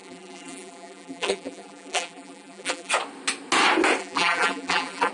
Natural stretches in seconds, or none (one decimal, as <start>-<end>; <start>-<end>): 2.9-4.0